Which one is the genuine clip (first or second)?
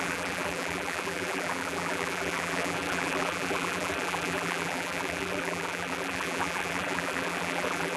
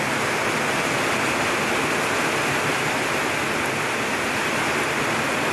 second